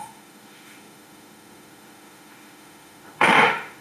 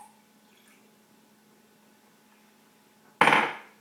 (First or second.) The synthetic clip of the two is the first